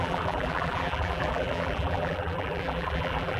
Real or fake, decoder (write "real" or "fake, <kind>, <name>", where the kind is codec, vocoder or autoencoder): fake, vocoder, BigVGAN v2